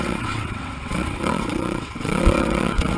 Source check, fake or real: fake